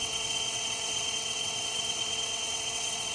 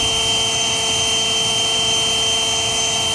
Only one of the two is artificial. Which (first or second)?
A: first